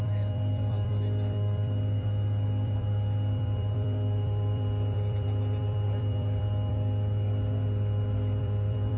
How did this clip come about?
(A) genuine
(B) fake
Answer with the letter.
B